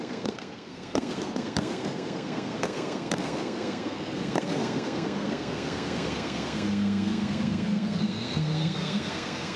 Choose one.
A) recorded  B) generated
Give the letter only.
B